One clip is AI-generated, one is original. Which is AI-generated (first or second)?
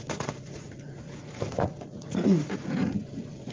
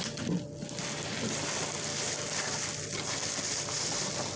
first